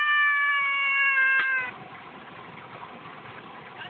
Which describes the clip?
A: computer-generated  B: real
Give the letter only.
B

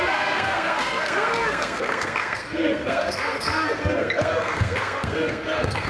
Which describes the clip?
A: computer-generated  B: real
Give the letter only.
A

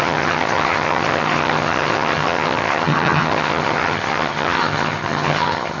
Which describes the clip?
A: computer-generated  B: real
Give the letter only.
A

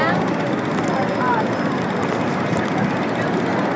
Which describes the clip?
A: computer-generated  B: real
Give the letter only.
B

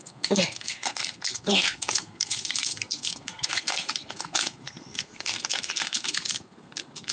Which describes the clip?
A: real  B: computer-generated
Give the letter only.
B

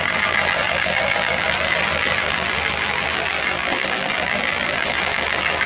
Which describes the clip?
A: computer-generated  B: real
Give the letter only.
A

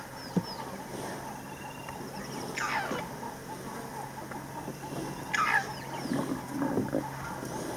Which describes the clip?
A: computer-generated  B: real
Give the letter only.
B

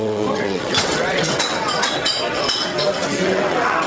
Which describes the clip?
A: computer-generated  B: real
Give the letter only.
A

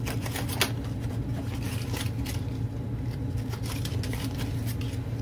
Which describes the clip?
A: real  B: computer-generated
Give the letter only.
A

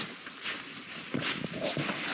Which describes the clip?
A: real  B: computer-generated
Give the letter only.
A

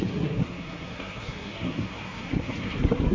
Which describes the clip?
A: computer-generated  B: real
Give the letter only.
A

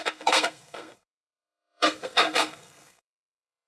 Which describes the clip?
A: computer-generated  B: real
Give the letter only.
A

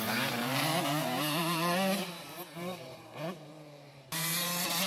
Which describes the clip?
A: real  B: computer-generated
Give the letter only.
B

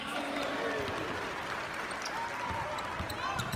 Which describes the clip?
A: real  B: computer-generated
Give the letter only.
A